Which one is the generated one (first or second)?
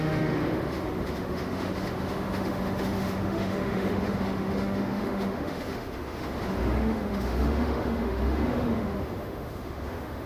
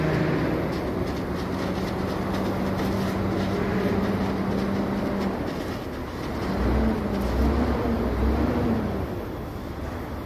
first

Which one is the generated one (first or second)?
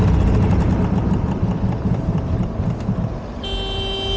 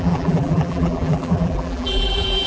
second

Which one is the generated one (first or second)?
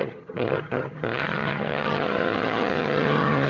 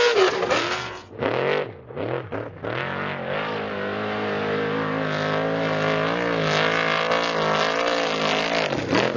first